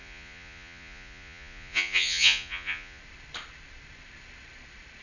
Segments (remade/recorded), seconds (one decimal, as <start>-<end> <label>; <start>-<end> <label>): 0.0-3.0 remade; 3.0-5.0 recorded

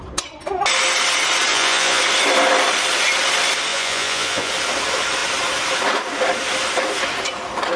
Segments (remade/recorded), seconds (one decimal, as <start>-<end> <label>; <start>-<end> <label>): 0.0-1.5 recorded; 1.5-2.0 remade; 2.0-3.7 recorded; 3.7-4.5 remade; 4.5-7.8 recorded

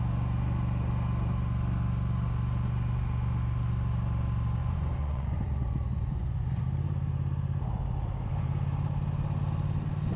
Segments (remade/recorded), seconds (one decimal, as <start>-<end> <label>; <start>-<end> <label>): 0.0-4.6 recorded; 4.6-6.6 remade; 6.6-10.2 recorded